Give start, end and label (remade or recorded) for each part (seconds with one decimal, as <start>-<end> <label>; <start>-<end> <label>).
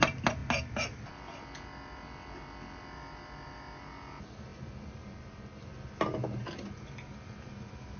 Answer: 0.0-8.0 recorded